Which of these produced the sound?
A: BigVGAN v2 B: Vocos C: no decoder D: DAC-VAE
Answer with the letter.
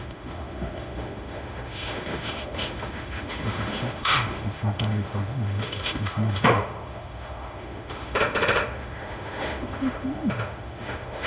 D